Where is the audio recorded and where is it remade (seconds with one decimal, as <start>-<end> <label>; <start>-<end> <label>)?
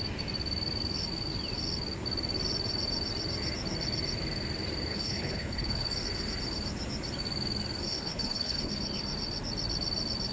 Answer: 0.0-4.9 recorded; 4.9-5.9 remade; 5.9-7.9 recorded; 7.9-8.7 remade; 8.7-10.3 recorded